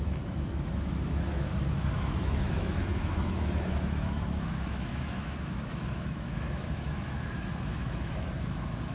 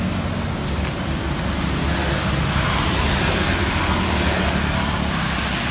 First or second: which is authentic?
second